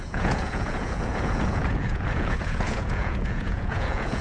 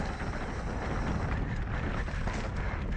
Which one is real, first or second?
second